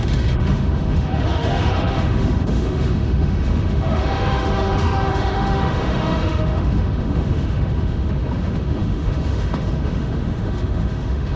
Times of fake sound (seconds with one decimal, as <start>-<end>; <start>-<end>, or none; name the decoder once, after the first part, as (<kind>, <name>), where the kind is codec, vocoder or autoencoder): 0.0-11.4 (autoencoder, DAC-VAE)